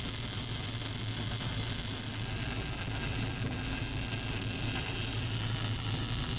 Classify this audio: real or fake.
fake